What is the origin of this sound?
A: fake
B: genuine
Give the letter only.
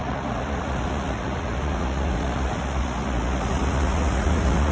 A